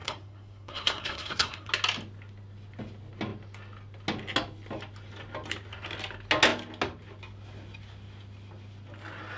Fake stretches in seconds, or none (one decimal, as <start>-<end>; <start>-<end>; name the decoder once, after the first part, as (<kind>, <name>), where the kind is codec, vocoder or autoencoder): 0.0-1.7 (codec, SNAC)